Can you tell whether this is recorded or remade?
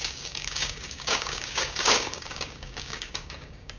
remade